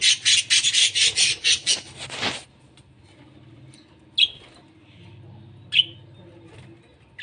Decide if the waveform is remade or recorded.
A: recorded